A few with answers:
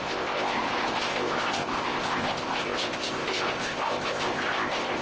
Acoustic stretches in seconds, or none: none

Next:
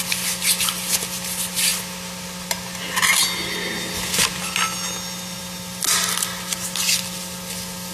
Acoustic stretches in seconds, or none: 0.0-7.9

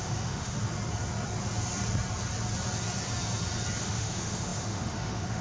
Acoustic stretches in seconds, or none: 0.6-3.8

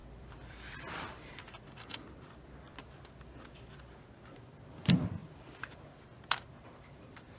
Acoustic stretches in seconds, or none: 2.8-5.2

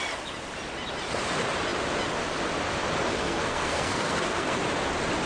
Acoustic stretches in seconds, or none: 0.0-3.1; 4.6-5.3